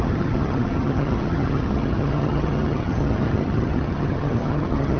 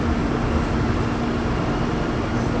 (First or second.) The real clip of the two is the second